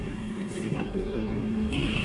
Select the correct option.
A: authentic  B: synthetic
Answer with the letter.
B